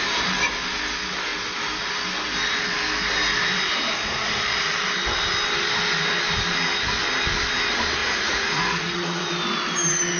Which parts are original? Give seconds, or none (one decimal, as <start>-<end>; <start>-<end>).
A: 0.0-8.0; 9.2-10.2